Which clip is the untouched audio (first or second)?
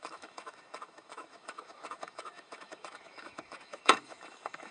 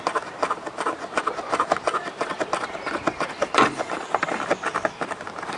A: second